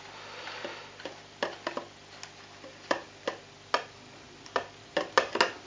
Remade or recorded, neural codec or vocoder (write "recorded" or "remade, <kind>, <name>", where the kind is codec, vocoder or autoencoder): recorded